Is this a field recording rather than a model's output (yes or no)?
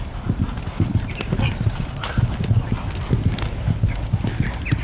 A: yes